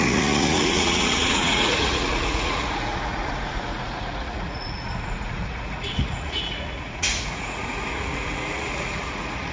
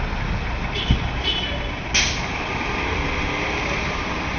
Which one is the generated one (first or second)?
first